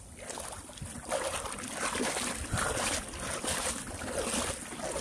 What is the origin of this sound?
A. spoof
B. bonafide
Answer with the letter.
B